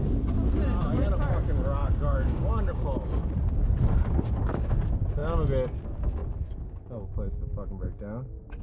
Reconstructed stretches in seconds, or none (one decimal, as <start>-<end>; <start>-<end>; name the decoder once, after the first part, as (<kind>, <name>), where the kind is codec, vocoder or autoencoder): 1.8-3.3 (codec, DAC)